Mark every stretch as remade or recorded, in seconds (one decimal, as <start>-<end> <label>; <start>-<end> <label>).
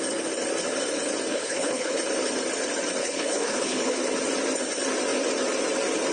0.0-1.3 recorded; 1.3-2.0 remade; 2.0-3.0 recorded; 3.0-4.0 remade; 4.0-6.1 recorded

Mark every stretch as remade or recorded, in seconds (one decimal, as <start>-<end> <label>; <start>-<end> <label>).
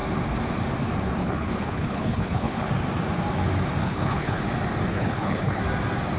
0.0-1.2 recorded; 1.2-2.7 remade; 2.7-3.8 recorded; 3.8-4.4 remade; 4.4-4.9 recorded; 4.9-5.6 remade; 5.6-6.2 recorded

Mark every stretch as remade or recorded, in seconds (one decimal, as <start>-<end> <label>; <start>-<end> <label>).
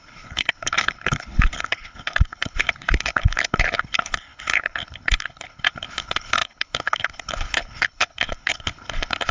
0.0-9.3 remade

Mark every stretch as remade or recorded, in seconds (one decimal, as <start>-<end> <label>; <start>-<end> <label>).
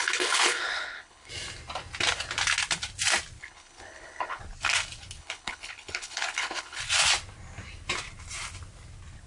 0.0-1.3 remade; 1.3-3.4 recorded; 3.4-4.4 remade; 4.4-5.2 recorded; 5.2-6.8 remade; 6.8-9.3 recorded